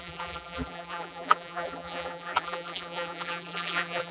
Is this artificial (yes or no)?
yes